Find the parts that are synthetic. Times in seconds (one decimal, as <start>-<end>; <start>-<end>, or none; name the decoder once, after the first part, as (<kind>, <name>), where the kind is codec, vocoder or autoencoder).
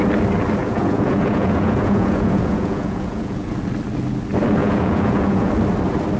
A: 0.6-3.5 (vocoder, Vocos); 4.6-5.5